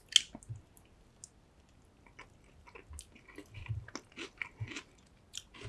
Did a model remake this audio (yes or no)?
no